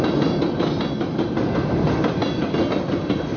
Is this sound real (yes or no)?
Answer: yes